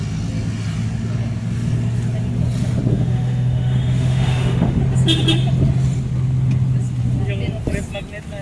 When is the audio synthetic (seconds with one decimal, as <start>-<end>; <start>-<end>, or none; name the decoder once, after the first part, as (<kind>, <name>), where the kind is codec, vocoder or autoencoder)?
2.9-4.8 (autoencoder, DAC-VAE)